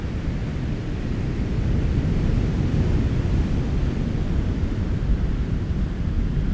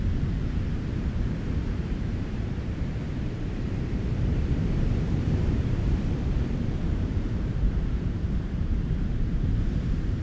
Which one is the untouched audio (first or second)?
first